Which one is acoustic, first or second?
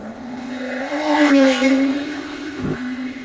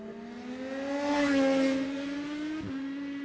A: second